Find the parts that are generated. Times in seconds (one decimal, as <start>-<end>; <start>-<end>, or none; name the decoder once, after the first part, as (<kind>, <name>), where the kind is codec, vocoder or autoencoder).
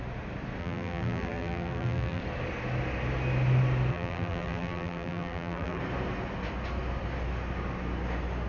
0.6-2.2 (vocoder, BigVGAN v2); 3.9-5.8